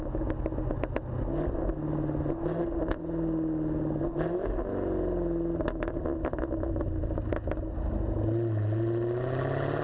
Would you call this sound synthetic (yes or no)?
no